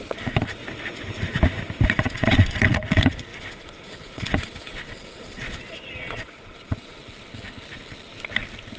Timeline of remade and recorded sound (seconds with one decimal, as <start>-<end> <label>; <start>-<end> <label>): 0.0-0.6 remade; 0.6-1.9 recorded; 1.9-7.0 remade; 7.0-8.8 recorded